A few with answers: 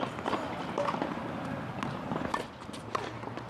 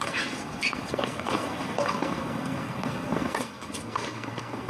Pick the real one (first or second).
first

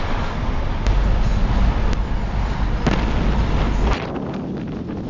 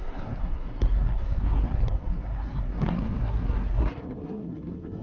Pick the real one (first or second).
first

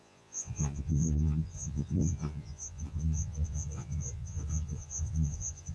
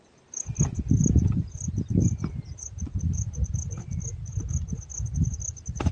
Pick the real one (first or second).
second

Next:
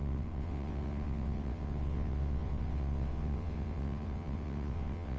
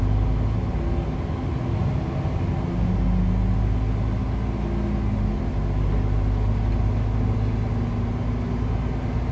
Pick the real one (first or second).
second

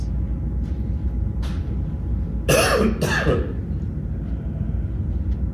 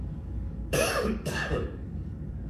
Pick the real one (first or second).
first